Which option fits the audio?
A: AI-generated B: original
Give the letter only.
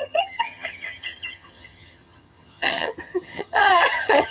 A